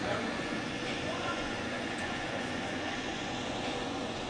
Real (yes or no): no